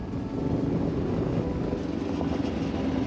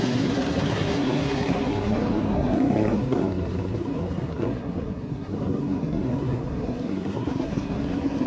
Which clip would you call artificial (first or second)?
second